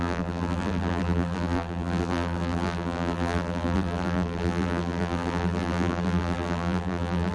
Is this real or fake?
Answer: fake